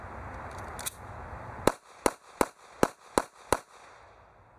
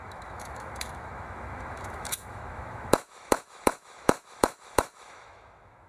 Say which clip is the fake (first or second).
second